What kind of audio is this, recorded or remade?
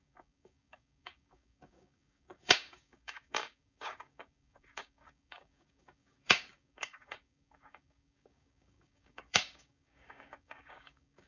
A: remade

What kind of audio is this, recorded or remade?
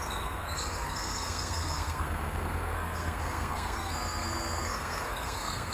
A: remade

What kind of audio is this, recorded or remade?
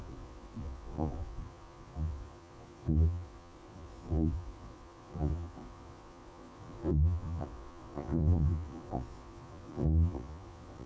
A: remade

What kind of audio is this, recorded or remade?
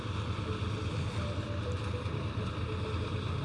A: recorded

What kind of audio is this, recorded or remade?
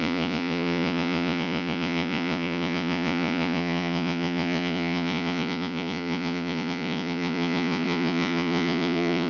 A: remade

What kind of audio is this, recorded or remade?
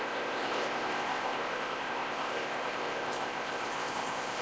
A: remade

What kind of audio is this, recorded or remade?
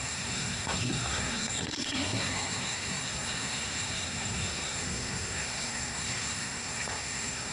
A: remade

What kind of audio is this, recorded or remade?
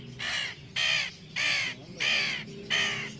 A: recorded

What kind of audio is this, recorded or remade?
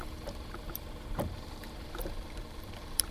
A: remade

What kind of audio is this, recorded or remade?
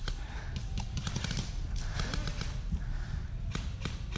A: recorded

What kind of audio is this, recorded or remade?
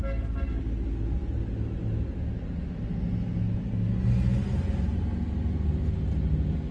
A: recorded